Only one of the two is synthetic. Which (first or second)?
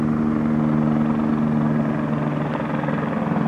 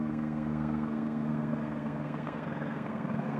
second